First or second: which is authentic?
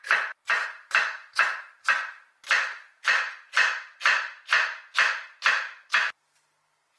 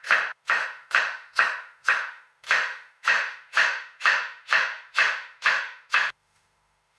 first